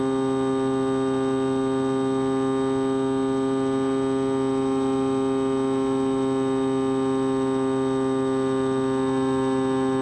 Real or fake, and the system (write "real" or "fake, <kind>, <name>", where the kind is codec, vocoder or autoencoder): real